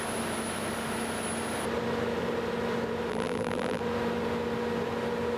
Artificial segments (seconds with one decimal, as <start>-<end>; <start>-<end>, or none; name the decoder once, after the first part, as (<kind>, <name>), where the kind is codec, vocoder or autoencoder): 3.1-3.8 (vocoder, BigVGAN v2)